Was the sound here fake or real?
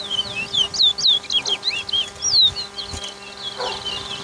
real